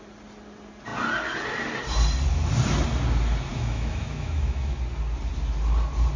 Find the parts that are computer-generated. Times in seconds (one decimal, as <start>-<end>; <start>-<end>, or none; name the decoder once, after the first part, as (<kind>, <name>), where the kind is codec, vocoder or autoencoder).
3.5-4.8 (autoencoder, DAC-VAE)